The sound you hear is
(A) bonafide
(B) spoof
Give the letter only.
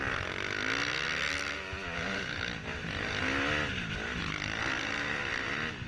A